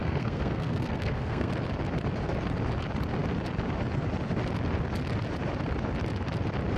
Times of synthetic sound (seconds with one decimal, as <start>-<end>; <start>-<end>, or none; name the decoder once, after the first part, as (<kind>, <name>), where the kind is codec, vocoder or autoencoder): 0.0-1.5 (codec, SNAC)